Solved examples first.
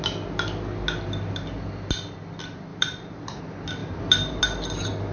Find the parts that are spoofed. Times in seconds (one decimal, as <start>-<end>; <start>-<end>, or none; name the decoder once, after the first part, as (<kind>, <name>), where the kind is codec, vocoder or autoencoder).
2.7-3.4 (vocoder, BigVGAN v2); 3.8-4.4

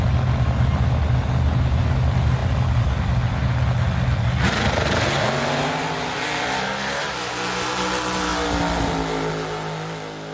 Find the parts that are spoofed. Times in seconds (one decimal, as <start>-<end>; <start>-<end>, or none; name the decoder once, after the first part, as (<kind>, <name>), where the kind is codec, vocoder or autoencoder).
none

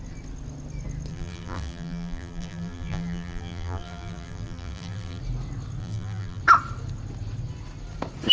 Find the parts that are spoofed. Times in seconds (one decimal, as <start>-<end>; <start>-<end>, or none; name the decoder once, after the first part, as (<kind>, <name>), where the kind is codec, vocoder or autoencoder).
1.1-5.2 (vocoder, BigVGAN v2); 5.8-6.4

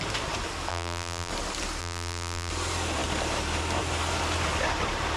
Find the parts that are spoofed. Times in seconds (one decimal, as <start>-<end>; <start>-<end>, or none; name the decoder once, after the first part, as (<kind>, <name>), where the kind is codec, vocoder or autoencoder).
0.7-1.3 (vocoder, BigVGAN v2); 1.8-2.5

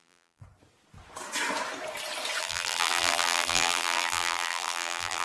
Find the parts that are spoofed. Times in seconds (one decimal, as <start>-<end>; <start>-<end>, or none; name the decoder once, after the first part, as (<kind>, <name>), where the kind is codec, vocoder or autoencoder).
0.0-0.4 (vocoder, BigVGAN v2); 2.4-5.2

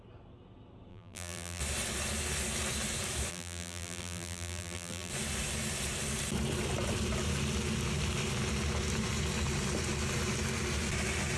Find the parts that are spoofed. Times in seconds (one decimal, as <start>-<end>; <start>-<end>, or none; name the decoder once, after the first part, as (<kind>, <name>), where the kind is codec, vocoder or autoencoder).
0.9-1.6 (vocoder, BigVGAN v2); 3.3-5.1